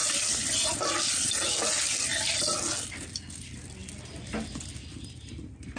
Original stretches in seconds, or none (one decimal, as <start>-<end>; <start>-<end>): 0.0-5.8